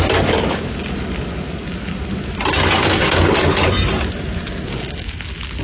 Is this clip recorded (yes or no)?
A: yes